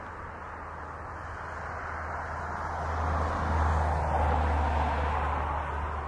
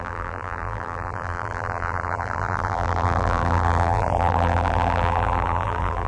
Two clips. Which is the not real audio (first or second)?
second